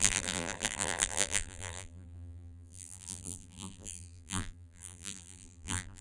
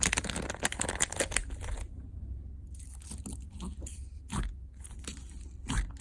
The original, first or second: second